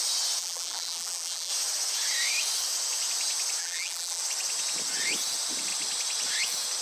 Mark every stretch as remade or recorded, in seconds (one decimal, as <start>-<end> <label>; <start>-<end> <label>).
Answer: 0.0-0.4 recorded; 0.4-1.5 remade; 1.5-3.6 recorded; 3.6-4.2 remade; 4.2-6.8 recorded